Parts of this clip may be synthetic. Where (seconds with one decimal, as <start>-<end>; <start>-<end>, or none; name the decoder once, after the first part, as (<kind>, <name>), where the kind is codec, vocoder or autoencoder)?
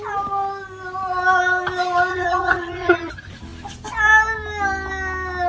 2.1-3.1 (vocoder, HiFi-GAN)